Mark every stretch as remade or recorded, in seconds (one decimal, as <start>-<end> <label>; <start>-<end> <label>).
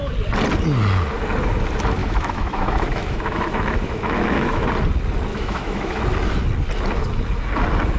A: 0.0-2.0 recorded; 2.0-4.7 remade; 4.7-5.3 recorded; 5.3-6.0 remade; 6.0-8.0 recorded